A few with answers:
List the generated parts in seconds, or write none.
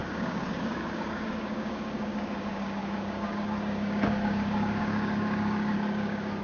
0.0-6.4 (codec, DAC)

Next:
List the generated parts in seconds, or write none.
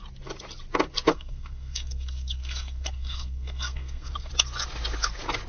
1.1-4.3 (codec, SNAC)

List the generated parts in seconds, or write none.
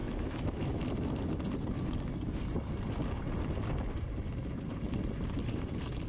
0.0-0.8 (autoencoder, DAC-VAE)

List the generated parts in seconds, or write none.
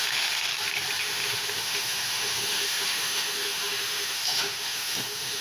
0.0-0.5 (autoencoder, DAC-VAE); 1.0-5.4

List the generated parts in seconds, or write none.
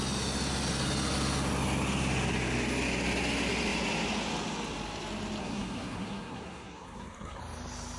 5.4-7.4 (codec, SNAC)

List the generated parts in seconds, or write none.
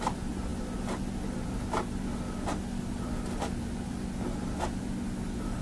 none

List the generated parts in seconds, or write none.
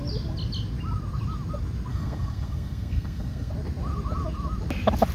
1.9-3.5 (codec, SNAC)